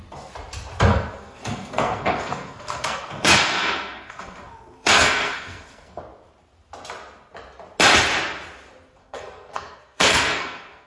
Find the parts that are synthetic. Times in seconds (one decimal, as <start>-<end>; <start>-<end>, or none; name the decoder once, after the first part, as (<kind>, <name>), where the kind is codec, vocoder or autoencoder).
0.9-6.0 (codec, SNAC); 9.0-10.9